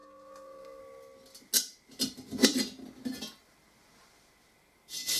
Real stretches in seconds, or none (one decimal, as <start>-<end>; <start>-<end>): 0.8-5.2